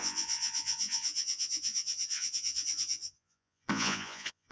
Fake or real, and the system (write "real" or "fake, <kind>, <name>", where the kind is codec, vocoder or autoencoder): fake, vocoder, Vocos